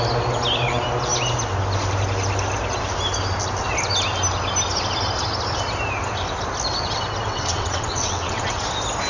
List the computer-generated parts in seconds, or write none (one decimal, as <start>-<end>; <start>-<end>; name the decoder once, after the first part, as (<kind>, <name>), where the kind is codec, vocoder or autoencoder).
7.3-8.6 (vocoder, WaveNeXt)